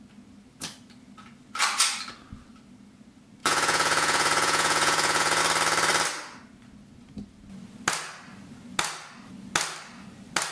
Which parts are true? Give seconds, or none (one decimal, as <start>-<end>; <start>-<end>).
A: 0.0-3.4; 5.4-10.5